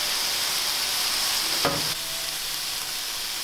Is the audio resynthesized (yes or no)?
no